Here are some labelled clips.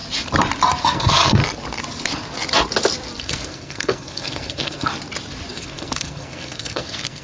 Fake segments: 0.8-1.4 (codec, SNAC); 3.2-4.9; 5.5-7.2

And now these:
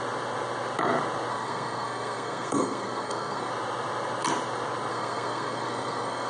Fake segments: 1.3-3.5 (codec, SNAC); 4.9-6.3

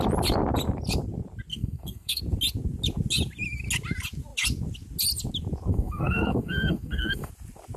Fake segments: 1.5-2.2 (codec, SNAC); 5.7-7.3

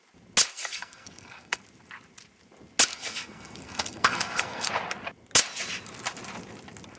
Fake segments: 0.5-1.6 (codec, SNAC); 2.9-4.7

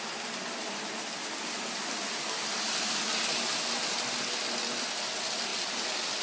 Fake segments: none